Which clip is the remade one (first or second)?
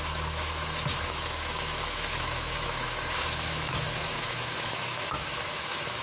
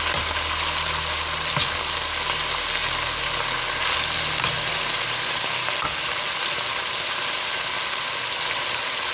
first